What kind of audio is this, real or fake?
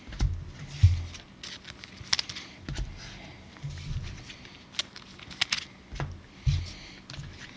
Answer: real